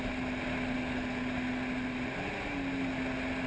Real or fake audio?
real